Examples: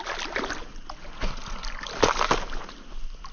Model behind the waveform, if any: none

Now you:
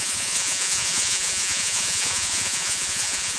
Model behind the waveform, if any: vocoder, Vocos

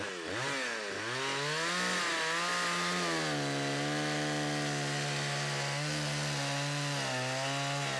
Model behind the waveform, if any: none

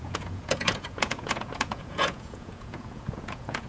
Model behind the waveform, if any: vocoder, Vocos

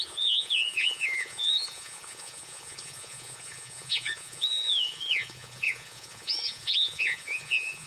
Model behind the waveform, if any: vocoder, Vocos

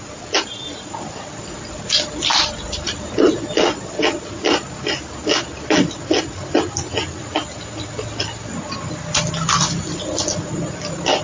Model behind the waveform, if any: none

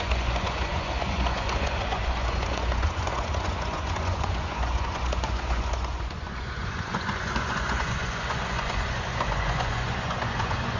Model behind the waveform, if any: vocoder, Vocos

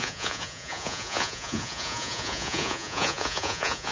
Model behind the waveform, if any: vocoder, Vocos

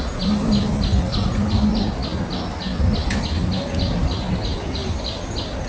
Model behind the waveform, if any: none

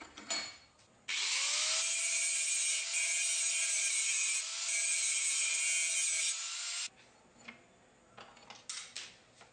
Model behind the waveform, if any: none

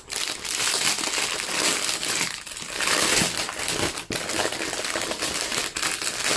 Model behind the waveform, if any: none